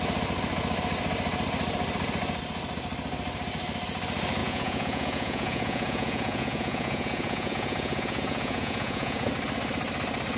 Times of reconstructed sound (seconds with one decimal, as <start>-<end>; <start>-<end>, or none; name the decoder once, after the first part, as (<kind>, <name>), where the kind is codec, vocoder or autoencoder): 4.4-9.3 (vocoder, Vocos)